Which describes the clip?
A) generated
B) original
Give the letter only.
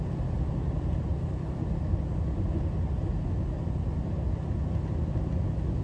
B